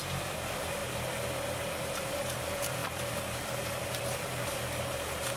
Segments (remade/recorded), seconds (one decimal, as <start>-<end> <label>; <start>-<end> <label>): 0.0-0.8 remade; 0.8-2.0 recorded; 2.0-5.4 remade